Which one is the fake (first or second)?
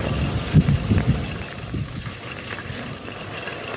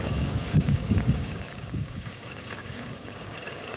second